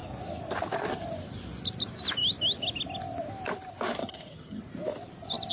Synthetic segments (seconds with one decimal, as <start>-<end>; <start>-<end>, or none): 4.0-4.6